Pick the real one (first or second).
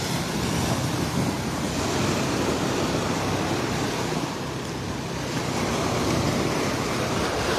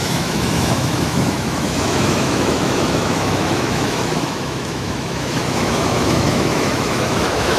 first